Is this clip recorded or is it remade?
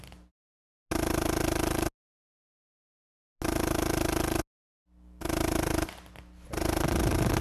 recorded